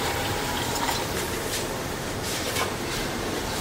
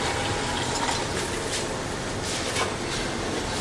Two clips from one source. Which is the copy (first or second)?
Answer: first